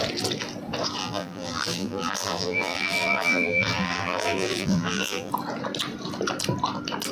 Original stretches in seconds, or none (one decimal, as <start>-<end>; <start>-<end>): 0.0-1.0; 5.3-7.1

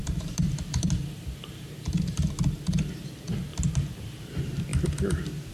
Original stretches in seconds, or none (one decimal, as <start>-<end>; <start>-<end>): 3.1-3.5; 4.3-5.5

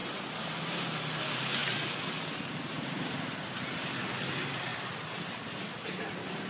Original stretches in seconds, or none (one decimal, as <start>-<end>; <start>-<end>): none